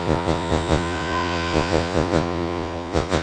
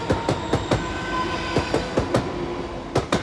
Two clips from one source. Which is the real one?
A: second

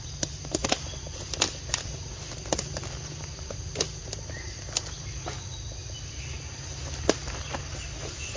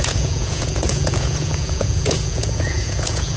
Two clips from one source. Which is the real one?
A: first